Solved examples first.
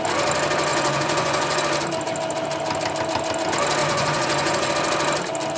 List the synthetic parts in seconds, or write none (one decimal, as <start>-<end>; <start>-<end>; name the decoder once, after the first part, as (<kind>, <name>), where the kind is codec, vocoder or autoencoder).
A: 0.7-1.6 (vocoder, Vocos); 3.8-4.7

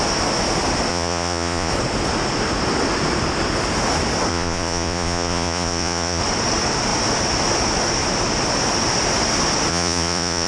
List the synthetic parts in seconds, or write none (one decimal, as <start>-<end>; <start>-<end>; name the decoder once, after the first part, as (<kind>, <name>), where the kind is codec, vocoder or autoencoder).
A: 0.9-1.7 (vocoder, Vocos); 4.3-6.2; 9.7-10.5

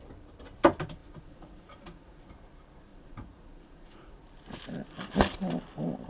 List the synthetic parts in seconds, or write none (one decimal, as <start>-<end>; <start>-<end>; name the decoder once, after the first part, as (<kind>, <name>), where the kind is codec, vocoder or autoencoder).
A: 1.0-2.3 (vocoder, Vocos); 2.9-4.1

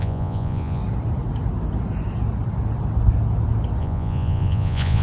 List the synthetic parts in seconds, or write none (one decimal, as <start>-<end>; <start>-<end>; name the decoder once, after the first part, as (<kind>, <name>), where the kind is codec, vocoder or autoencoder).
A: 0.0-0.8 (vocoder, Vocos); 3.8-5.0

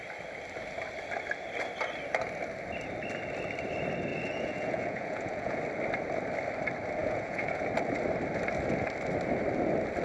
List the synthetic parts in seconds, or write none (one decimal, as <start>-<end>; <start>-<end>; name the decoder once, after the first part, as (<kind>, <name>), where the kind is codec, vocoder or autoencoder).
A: 4.1-5.6 (vocoder, Vocos); 7.0-7.6

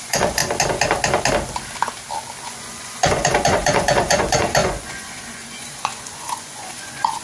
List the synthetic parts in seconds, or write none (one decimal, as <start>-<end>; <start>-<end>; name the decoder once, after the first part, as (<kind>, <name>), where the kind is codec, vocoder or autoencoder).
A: 0.0-0.4 (vocoder, Vocos); 2.4-7.2